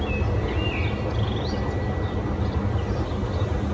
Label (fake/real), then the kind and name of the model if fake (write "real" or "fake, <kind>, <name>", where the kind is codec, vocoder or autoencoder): real